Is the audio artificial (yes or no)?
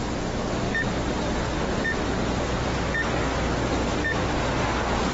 no